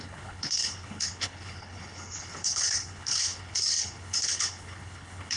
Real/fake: fake